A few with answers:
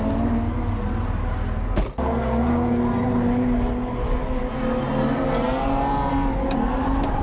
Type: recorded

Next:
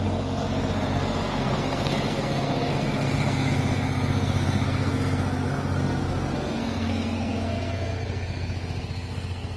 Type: remade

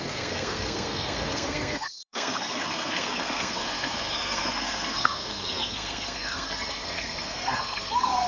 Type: remade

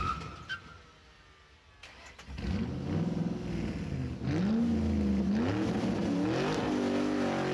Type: recorded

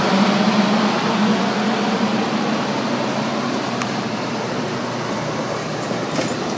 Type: recorded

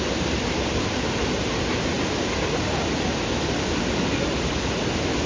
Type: recorded